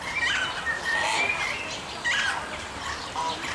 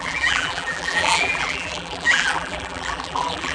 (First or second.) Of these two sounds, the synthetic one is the second